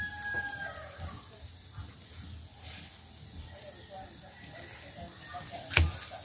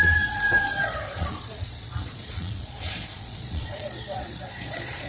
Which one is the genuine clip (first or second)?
first